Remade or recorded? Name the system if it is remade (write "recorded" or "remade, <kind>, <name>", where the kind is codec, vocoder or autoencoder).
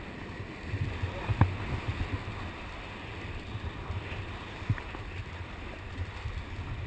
recorded